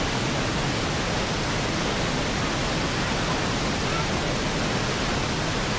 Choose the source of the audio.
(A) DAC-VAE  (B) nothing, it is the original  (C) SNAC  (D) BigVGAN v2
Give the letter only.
B